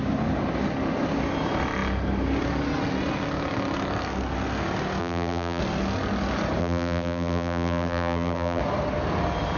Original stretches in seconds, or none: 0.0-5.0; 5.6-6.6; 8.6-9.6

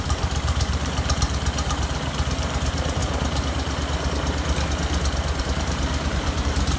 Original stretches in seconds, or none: 3.0-5.4

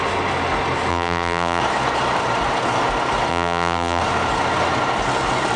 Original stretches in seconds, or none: 0.0-0.9; 1.6-3.3; 4.0-5.6

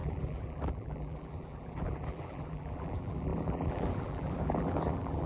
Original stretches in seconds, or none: none

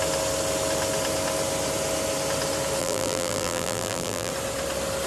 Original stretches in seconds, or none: 0.0-2.8; 4.3-5.1